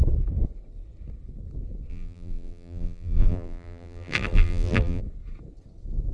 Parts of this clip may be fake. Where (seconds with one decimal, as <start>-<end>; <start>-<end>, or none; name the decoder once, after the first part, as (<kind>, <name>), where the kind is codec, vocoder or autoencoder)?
1.9-5.0 (vocoder, BigVGAN v2)